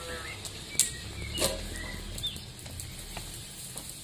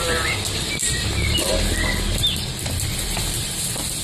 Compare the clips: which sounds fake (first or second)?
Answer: second